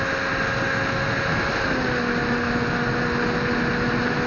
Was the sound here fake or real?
real